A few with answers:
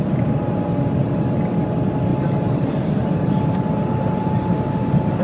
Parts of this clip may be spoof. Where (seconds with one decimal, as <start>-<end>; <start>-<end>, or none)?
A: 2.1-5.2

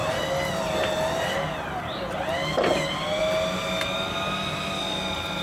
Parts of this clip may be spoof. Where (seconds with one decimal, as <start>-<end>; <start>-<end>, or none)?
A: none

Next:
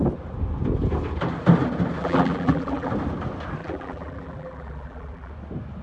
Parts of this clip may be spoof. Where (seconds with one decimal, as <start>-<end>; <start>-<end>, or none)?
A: 2.0-2.9; 3.6-5.3